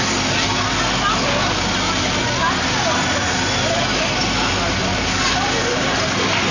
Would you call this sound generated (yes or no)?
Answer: no